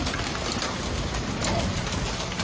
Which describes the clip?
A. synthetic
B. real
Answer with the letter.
B